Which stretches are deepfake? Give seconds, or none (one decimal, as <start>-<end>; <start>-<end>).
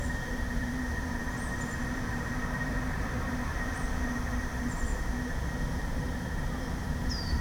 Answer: 0.0-4.9; 5.7-7.4